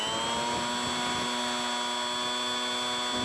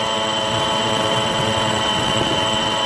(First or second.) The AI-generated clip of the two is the second